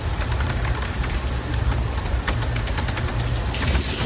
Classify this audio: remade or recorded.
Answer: recorded